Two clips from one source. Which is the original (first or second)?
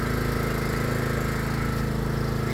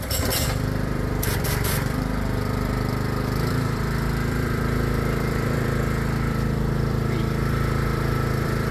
first